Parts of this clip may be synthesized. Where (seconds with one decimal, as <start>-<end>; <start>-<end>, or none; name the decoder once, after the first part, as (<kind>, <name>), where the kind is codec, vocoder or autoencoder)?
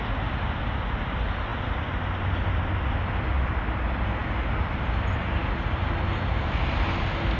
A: none